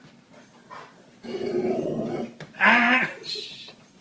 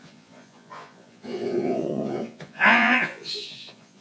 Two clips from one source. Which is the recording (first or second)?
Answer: first